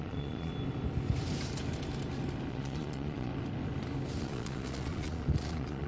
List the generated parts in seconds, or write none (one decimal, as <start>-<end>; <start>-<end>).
0.0-0.5; 2.5-3.3; 4.2-5.9